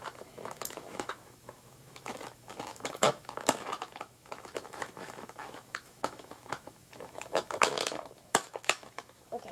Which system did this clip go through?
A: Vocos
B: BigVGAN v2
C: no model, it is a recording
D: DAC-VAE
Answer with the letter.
D